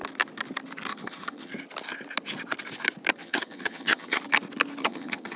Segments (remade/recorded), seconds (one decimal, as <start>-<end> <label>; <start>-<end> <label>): 0.0-0.9 recorded; 0.9-1.5 remade; 1.5-3.2 recorded; 3.2-4.2 remade; 4.2-4.8 recorded; 4.8-5.4 remade